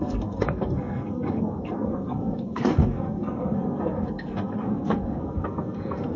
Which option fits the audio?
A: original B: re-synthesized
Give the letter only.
B